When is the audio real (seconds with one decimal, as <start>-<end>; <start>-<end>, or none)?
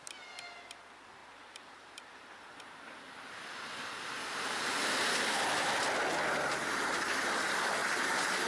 0.0-1.2; 2.4-7.8